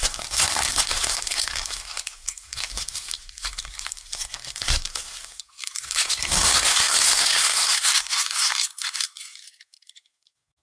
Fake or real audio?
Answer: fake